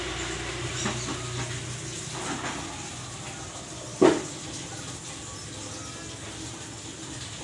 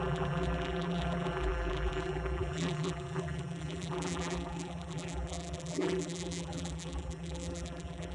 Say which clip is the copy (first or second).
second